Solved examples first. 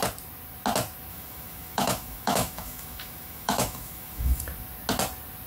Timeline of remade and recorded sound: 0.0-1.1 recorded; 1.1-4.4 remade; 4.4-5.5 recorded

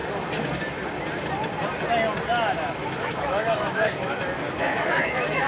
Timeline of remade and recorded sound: 0.0-2.8 recorded; 2.8-5.5 remade

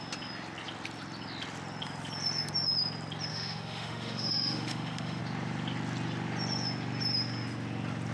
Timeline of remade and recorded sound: 0.0-3.3 recorded; 3.3-5.2 remade; 5.2-8.1 recorded

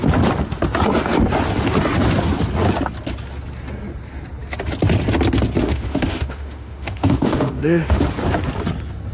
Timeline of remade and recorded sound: 0.0-5.6 recorded; 5.6-8.0 remade; 8.0-9.1 recorded

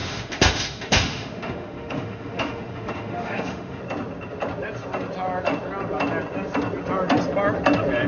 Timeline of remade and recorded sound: 0.0-3.8 remade; 3.8-8.1 recorded